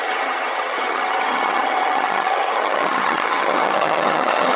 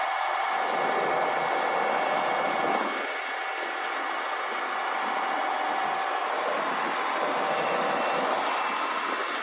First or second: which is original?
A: second